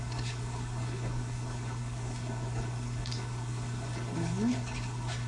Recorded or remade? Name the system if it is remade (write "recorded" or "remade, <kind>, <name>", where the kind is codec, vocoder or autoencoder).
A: remade, codec, HILCodec